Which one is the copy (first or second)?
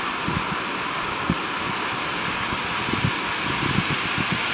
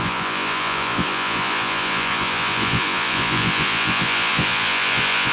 second